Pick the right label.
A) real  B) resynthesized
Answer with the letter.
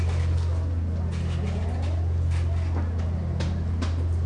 A